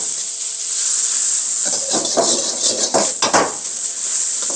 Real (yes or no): yes